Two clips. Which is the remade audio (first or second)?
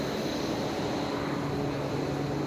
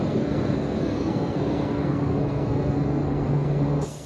second